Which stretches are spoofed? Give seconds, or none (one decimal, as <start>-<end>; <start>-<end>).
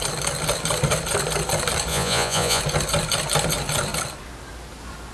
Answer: 1.9-2.6